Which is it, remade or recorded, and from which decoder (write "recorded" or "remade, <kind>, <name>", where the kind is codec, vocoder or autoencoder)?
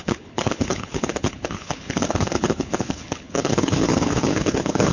remade, codec, HILCodec